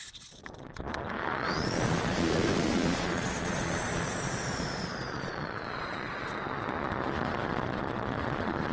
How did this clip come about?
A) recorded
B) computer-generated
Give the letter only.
B